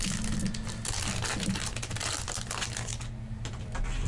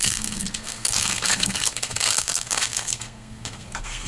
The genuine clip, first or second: first